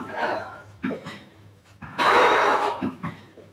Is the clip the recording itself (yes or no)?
no